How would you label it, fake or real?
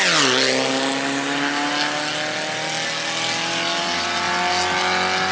real